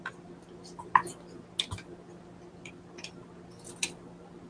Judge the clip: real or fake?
real